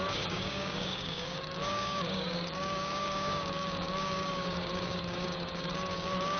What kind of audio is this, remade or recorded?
remade